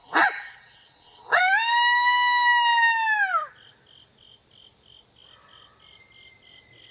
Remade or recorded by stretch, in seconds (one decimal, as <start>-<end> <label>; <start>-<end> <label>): 0.0-1.4 remade; 1.4-6.9 recorded